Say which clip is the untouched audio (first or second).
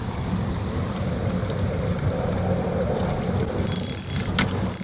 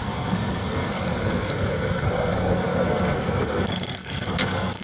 first